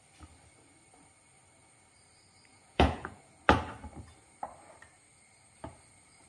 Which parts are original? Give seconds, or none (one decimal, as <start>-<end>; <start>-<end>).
0.0-2.5; 3.2-6.3